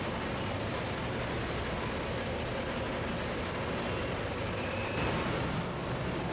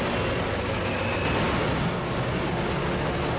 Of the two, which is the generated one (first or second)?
first